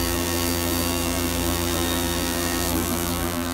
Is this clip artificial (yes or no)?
yes